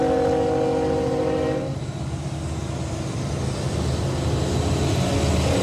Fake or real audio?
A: real